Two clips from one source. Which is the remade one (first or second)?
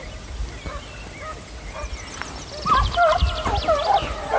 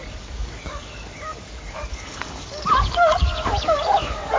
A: second